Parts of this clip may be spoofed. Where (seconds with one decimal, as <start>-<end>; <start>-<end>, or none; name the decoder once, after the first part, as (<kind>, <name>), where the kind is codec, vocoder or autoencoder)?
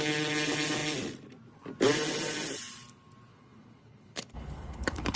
3.3-5.2 (codec, HILCodec)